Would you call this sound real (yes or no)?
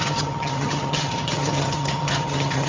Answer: no